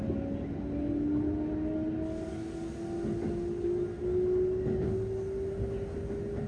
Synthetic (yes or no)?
no